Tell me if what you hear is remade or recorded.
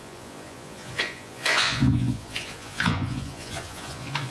remade